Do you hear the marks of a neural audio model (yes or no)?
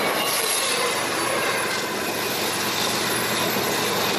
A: no